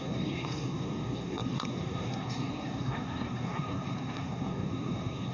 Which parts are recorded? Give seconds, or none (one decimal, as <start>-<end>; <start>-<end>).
none